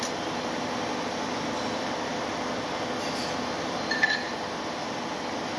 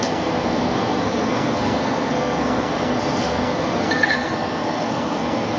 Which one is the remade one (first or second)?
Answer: second